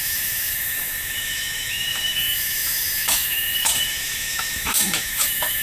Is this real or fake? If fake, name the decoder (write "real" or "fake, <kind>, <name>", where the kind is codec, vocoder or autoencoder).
fake, autoencoder, DAC-VAE